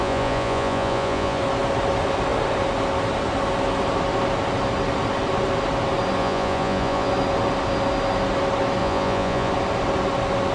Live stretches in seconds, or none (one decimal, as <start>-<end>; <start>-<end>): 1.4-6.2; 7.1-8.8; 9.5-10.5

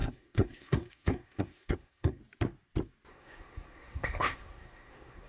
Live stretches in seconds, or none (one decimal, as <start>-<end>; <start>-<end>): 2.2-3.1